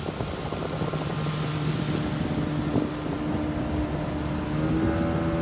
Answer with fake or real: real